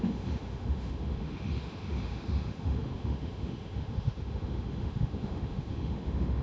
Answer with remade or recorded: remade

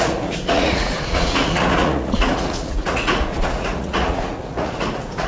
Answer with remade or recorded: remade